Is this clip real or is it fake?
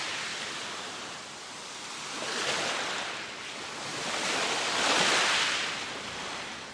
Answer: real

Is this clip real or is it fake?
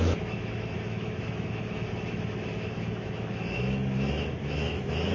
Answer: fake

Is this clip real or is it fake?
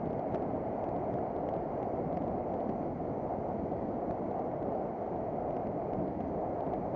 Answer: real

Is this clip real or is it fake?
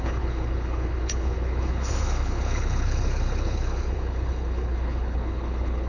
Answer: fake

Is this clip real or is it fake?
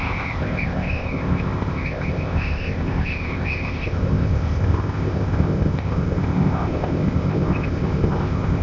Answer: fake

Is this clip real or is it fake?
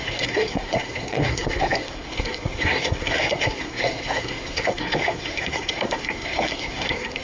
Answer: fake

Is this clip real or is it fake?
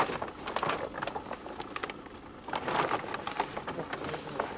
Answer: real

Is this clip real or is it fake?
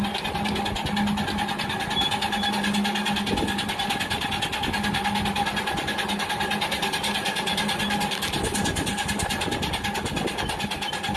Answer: real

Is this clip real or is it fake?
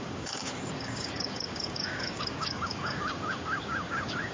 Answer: fake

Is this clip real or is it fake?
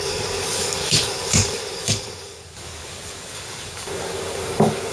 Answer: fake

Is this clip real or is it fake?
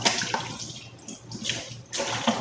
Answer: real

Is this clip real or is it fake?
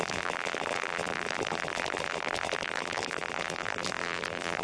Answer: fake